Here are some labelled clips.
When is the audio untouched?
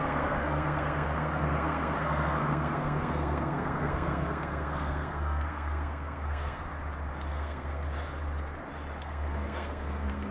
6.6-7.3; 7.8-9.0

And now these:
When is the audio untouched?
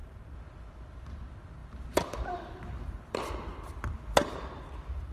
0.0-1.6; 4.5-5.1